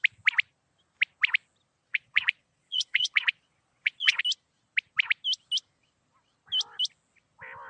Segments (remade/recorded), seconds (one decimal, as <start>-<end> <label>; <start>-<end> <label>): 0.0-1.8 recorded; 1.8-4.2 remade; 4.2-7.7 recorded